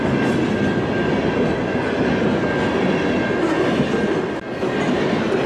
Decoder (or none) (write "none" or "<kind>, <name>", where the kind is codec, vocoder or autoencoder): none